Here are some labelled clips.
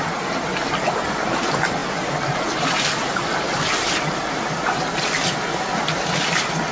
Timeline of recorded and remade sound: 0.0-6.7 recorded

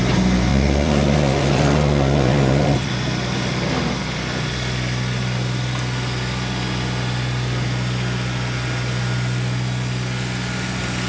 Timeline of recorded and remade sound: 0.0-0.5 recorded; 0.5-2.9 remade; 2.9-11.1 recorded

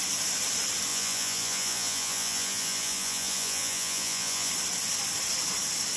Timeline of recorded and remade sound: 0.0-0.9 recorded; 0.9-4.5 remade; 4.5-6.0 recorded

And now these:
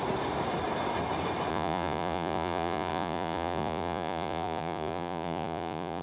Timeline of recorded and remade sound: 0.0-1.5 recorded; 1.5-6.0 remade

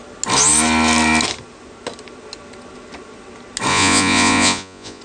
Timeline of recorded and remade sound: 0.0-3.7 recorded; 3.7-5.0 remade

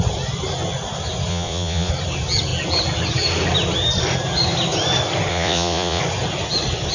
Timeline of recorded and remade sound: 0.0-1.3 recorded; 1.3-1.9 remade; 1.9-5.3 recorded; 5.3-6.0 remade; 6.0-6.9 recorded

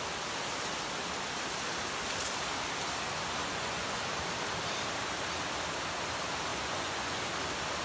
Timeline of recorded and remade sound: 0.0-3.4 recorded; 3.4-4.0 remade; 4.0-6.5 recorded; 6.5-7.2 remade; 7.2-7.8 recorded

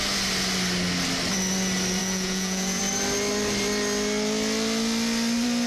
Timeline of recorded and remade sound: 0.0-2.0 recorded; 2.0-2.8 remade; 2.8-5.7 recorded